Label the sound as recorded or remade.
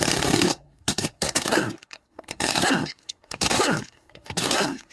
remade